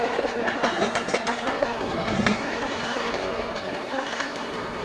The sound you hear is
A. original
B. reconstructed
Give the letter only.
B